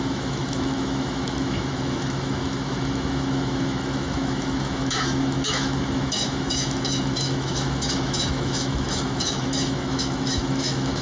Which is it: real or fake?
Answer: fake